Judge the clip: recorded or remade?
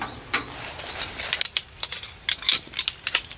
recorded